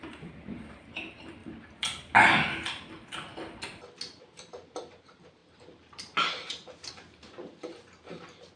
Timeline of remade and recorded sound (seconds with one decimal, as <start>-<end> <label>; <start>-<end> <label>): 0.0-1.4 remade; 1.4-4.2 recorded; 4.2-8.6 remade